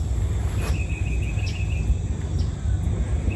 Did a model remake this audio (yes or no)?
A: no